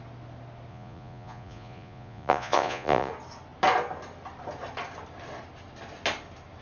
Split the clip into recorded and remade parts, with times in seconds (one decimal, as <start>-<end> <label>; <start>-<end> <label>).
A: 0.0-0.7 recorded; 0.7-3.1 remade; 3.1-6.6 recorded